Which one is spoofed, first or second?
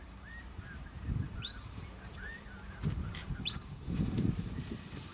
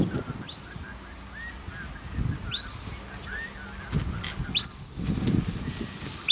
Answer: first